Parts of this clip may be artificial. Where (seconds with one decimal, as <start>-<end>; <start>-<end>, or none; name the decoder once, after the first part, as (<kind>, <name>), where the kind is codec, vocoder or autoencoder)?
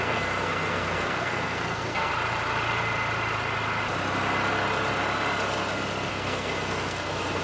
0.0-2.1 (codec, SNAC); 6.1-7.4